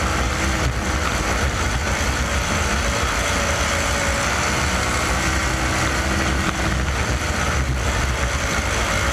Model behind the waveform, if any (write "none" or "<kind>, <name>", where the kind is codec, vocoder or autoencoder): none